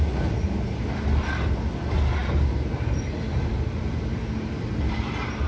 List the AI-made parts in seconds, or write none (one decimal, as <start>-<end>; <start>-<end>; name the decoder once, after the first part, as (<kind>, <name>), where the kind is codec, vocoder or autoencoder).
none